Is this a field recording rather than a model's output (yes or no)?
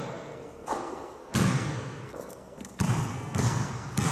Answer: no